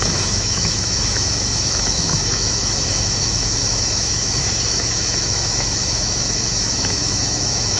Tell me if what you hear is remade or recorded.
remade